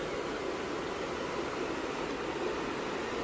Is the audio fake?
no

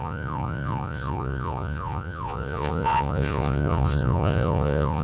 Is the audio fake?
yes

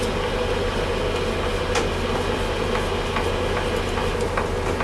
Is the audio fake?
no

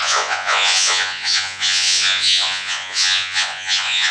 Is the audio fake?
yes